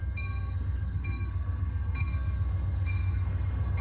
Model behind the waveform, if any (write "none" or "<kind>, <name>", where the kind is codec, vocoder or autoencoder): codec, SNAC